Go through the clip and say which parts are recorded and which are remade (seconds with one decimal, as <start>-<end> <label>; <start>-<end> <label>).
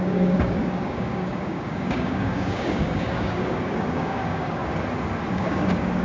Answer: 0.0-4.6 remade; 4.6-5.3 recorded; 5.3-6.0 remade